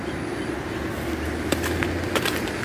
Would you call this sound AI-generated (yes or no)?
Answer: no